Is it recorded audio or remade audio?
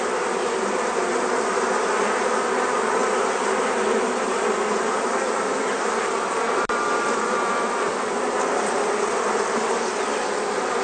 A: remade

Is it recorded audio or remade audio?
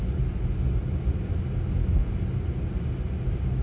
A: recorded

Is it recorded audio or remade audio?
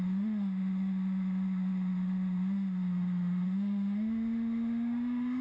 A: remade